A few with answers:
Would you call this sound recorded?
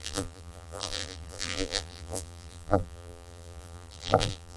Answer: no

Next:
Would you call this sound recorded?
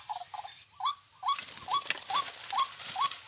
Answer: yes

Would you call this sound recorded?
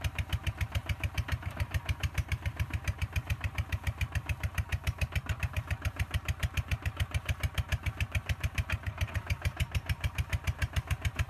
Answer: no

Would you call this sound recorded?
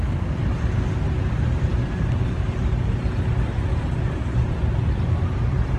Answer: yes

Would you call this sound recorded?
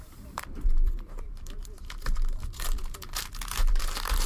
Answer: no